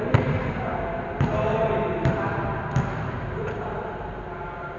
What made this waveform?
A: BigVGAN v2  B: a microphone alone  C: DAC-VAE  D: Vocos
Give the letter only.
B